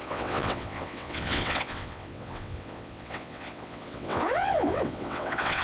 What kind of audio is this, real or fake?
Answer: fake